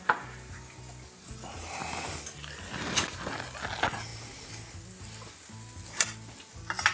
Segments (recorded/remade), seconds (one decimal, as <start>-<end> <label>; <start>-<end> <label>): 0.0-6.9 recorded